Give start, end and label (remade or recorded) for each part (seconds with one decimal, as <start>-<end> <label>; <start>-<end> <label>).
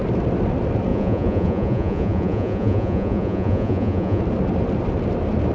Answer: 0.0-0.9 recorded; 0.9-4.2 remade; 4.2-5.5 recorded